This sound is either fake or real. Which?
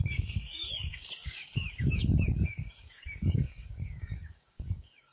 fake